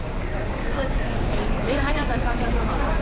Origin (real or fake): fake